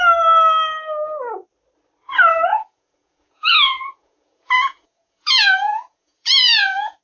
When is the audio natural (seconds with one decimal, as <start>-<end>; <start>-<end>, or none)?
0.0-2.5